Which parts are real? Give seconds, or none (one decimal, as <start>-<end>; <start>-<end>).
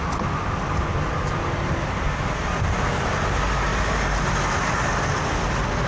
0.0-5.9